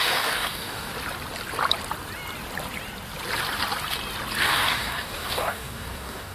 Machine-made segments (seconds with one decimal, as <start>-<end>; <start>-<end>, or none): 0.0-0.9; 4.4-6.3

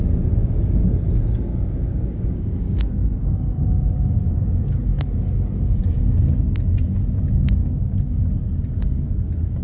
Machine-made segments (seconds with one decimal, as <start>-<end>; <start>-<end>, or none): 0.4-4.3; 4.9-5.8; 7.6-8.2